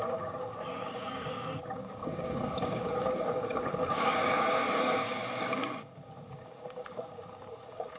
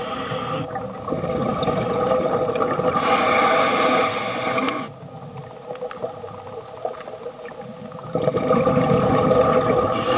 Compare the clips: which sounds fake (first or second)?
first